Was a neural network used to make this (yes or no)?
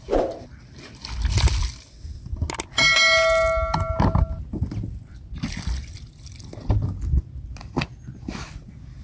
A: no